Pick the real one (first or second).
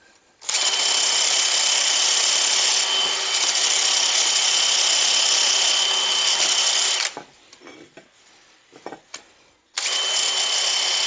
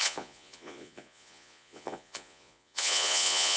first